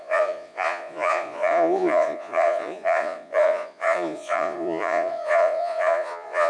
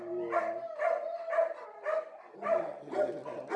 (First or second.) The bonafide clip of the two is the second